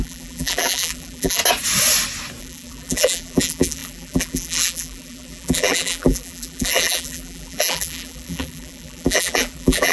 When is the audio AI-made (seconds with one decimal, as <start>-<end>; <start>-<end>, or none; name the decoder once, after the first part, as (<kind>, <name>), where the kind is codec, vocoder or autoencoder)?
0.0-1.4 (vocoder, BigVGAN v2); 2.4-9.9